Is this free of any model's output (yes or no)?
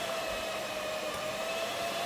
no